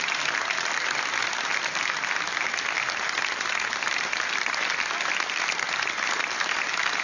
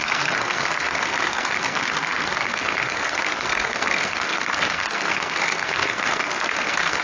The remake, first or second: second